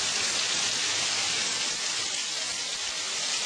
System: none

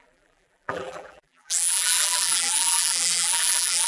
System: vocoder, BigVGAN v2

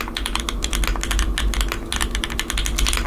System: none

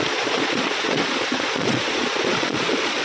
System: vocoder, Vocos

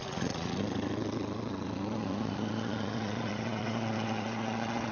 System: vocoder, Vocos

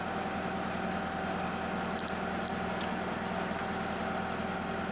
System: none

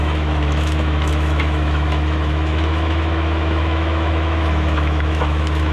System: autoencoder, DAC-VAE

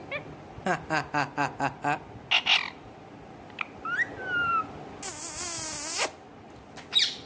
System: none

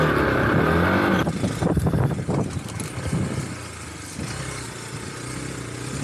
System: none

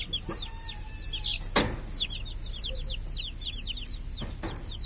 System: none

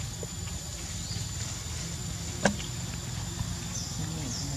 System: none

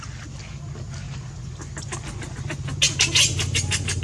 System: none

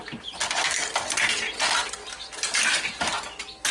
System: none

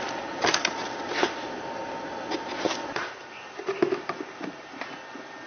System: none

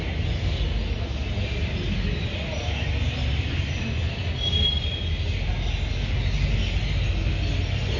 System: none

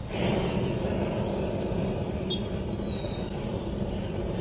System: none